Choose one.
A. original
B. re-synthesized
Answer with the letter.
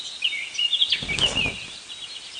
A